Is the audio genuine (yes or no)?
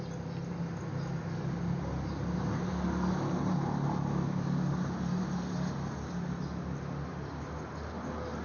yes